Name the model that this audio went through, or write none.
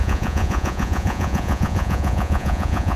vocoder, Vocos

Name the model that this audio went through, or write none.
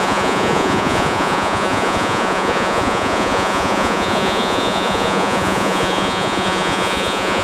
vocoder, Vocos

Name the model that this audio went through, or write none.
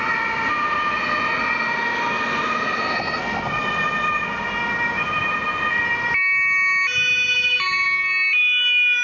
none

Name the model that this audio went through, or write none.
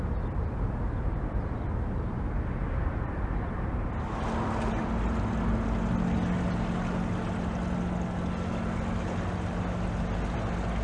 none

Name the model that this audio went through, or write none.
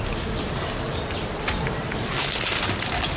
none